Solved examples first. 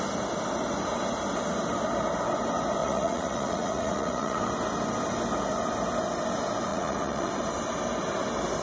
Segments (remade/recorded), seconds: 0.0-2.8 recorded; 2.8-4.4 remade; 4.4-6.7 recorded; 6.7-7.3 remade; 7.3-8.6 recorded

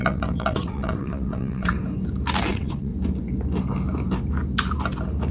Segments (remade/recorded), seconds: 0.0-1.8 remade; 1.8-2.5 recorded; 2.5-2.9 remade; 2.9-5.3 recorded